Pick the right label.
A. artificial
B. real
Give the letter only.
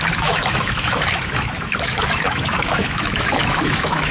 A